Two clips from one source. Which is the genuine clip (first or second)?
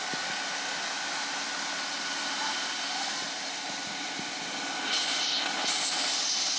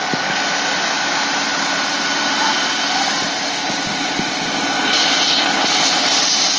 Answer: first